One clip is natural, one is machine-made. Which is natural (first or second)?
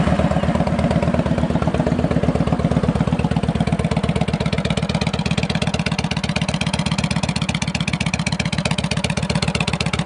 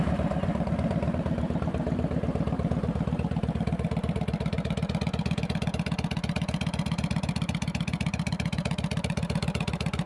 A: first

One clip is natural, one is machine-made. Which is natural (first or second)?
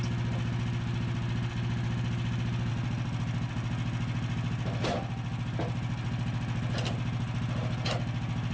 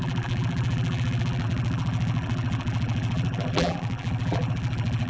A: first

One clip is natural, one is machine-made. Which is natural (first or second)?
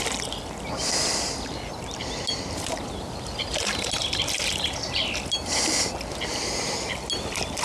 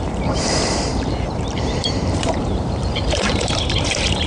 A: first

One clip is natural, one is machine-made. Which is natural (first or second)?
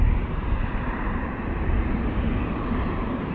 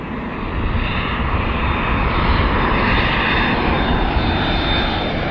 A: second